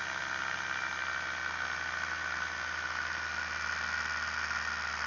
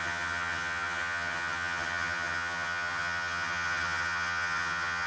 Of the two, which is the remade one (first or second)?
second